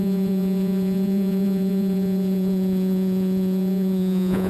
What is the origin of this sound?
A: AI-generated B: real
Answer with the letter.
A